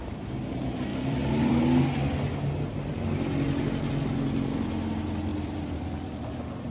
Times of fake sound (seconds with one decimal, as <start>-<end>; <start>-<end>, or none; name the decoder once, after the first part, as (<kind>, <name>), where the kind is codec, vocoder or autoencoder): 0.9-1.6 (vocoder, BigVGAN v2); 2.7-3.9; 5.3-6.3